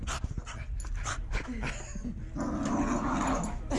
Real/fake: real